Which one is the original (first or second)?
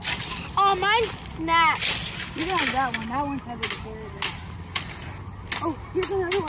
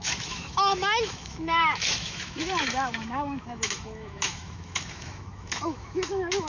first